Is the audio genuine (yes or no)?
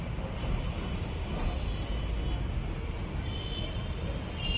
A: yes